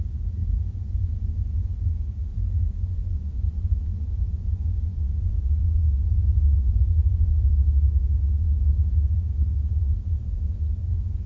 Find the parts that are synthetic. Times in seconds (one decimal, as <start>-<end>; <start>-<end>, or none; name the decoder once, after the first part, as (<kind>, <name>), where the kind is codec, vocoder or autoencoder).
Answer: 0.4-1.9 (vocoder, Vocos); 2.3-7.5